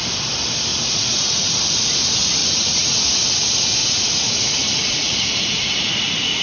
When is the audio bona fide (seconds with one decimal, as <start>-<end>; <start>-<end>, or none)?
0.0-0.7; 1.5-2.4; 3.1-3.8